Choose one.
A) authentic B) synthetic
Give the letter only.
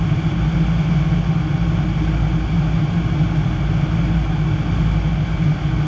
A